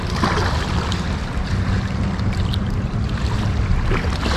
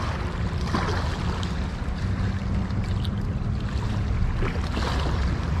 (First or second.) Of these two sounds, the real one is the second